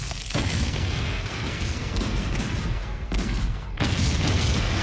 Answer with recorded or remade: remade